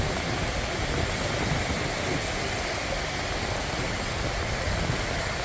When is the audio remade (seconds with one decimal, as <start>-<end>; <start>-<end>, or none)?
3.6-4.5